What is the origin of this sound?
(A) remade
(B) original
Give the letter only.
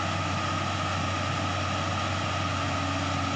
B